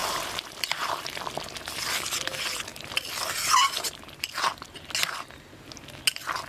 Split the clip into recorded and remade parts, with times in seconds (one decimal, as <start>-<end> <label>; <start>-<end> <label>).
0.0-1.3 remade; 1.3-6.5 recorded